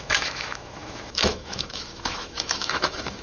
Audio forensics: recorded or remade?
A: remade